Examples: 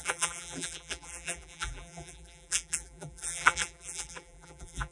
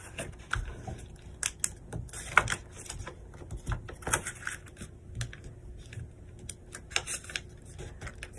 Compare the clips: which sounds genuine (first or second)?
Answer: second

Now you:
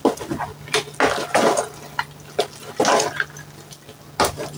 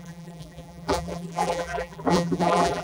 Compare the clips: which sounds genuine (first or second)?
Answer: first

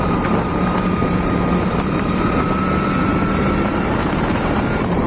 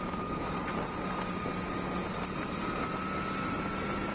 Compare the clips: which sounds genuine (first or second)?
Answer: second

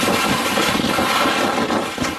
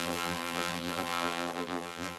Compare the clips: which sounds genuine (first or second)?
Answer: first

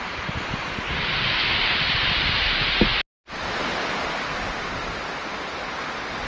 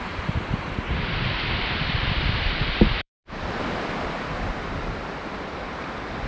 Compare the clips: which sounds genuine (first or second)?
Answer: first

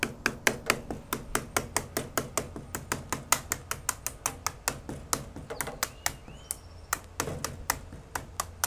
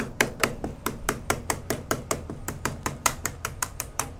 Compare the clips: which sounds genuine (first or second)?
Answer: first